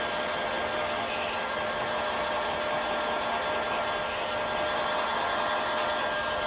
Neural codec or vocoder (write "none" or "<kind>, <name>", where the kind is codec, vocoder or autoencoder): none